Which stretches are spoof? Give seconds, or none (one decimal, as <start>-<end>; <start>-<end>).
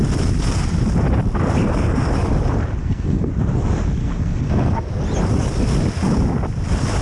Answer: 1.6-2.1; 2.8-3.3; 4.0-4.9